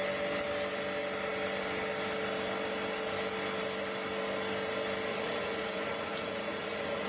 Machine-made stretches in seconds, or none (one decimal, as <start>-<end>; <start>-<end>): 5.1-7.1